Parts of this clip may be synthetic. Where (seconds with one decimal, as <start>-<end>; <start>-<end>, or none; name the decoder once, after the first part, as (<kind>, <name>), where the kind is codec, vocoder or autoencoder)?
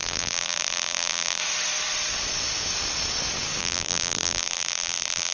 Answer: 0.0-1.4 (vocoder, BigVGAN v2); 3.6-5.3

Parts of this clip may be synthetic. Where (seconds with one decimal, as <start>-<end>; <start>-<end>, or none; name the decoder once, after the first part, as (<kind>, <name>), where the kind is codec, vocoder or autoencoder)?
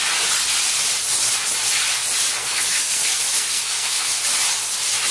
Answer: 2.4-4.2 (codec, SNAC)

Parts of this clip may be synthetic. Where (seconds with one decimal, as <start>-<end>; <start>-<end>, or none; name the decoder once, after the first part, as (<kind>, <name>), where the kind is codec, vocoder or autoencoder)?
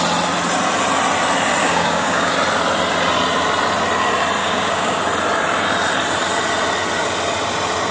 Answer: 1.6-2.3 (codec, DAC); 4.4-5.0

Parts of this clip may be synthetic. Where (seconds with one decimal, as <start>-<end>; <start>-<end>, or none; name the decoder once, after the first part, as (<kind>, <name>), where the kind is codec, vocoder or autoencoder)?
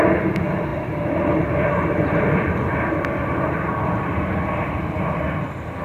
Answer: none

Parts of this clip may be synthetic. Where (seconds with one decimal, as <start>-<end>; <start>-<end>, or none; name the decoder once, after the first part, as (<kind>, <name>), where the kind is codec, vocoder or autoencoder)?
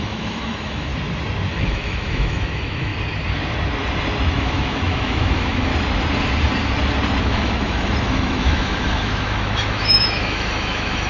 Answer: 0.0-0.9 (autoencoder, DAC-VAE); 1.5-2.9; 4.3-5.7; 7.2-11.1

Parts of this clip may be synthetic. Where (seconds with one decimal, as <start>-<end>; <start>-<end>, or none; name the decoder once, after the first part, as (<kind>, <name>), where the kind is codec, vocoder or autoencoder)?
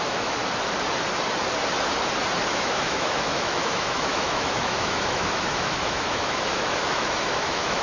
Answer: 0.0-0.4 (autoencoder, DAC-VAE); 2.5-7.8